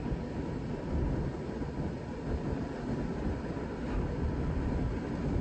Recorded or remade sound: recorded